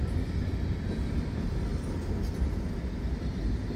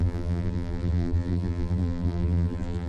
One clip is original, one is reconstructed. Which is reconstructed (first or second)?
second